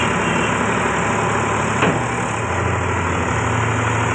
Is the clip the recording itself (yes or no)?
yes